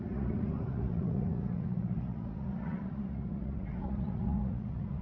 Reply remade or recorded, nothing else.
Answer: remade